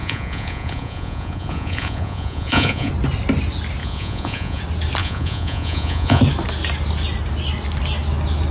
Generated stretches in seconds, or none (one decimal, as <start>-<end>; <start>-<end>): 0.0-2.9; 3.8-4.6; 5.0-6.2